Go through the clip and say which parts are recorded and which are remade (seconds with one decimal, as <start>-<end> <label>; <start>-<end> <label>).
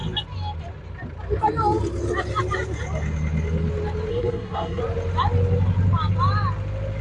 0.0-4.1 recorded; 4.1-4.8 remade; 4.8-7.0 recorded